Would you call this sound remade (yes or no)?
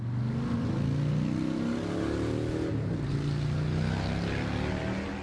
no